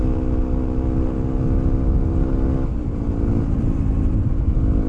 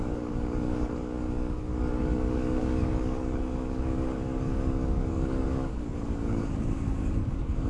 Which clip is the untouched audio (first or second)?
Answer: first